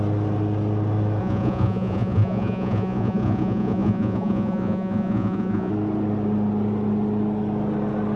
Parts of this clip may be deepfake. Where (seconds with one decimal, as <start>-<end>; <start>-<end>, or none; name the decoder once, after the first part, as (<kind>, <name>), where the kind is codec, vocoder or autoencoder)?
1.2-5.7 (vocoder, Vocos)

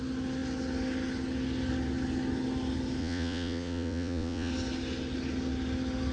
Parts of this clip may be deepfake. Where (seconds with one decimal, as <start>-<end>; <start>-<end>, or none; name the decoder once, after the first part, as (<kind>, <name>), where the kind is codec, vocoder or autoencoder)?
3.0-4.5 (vocoder, Vocos)

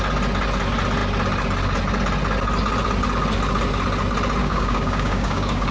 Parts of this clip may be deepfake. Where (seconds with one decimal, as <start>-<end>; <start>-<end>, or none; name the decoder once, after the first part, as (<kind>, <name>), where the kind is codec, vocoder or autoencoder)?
4.4-5.7 (codec, DAC)

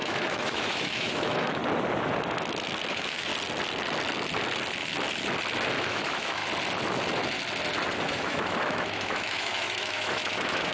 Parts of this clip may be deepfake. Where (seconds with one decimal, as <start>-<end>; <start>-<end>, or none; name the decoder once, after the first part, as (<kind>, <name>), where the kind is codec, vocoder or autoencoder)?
0.0-1.6 (autoencoder, DAC-VAE); 2.9-3.3; 5.8-6.4; 8.1-10.7

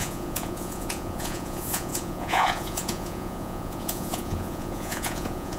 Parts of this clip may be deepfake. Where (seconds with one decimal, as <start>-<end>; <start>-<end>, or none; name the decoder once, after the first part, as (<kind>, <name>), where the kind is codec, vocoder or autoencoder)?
0.0-5.6 (vocoder, Vocos)